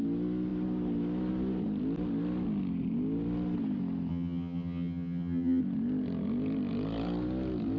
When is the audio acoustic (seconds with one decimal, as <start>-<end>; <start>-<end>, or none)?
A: 0.0-4.1; 5.6-7.8